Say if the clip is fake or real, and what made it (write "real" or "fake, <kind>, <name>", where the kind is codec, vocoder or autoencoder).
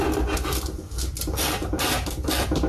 real